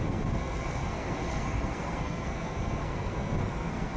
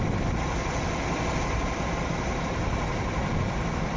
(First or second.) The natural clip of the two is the second